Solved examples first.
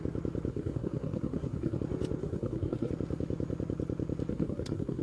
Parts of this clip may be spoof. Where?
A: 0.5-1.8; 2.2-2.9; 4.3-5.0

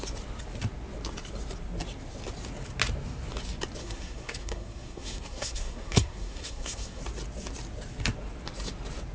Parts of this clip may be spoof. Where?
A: 3.8-7.0

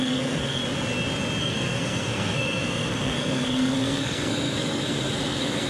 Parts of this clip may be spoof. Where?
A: 0.0-0.6; 1.4-5.7

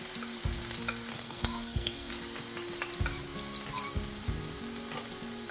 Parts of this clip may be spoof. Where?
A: 1.1-2.1

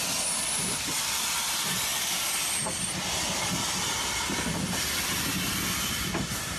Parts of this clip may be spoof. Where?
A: none

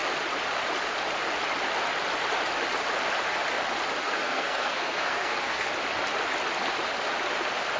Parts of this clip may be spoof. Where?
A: 4.0-5.7